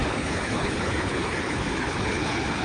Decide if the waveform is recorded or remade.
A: remade